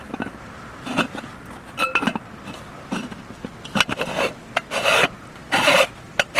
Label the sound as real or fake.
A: real